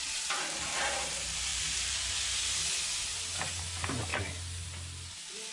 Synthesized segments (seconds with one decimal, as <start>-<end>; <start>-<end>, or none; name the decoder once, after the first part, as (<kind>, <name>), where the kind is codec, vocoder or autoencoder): 1.5-2.1 (vocoder, BigVGAN v2)